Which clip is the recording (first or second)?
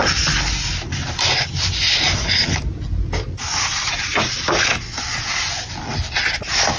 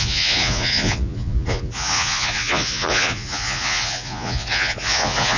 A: first